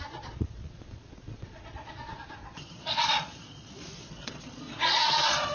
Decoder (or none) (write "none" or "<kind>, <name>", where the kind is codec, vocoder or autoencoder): vocoder, Vocos